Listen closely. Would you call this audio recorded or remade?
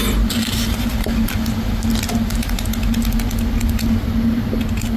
recorded